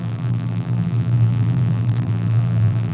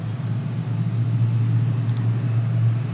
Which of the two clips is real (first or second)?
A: second